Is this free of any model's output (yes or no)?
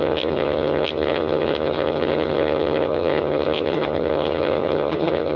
no